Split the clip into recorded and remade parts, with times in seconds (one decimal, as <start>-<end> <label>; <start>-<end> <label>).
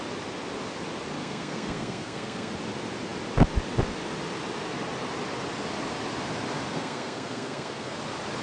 0.0-1.2 recorded; 1.2-2.5 remade; 2.5-6.7 recorded; 6.7-8.0 remade; 8.0-8.4 recorded